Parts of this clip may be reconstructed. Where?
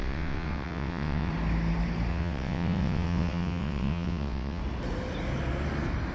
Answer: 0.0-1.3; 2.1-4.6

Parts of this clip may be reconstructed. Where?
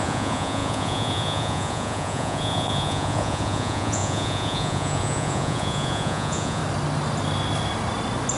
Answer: 0.0-6.6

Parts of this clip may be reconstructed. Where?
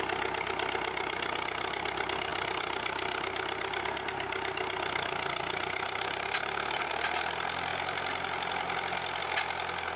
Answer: 2.3-6.9; 7.7-9.2